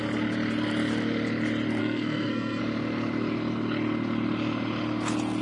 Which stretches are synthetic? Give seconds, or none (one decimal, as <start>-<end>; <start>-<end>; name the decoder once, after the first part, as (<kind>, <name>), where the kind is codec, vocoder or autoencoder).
1.8-2.6 (codec, SNAC)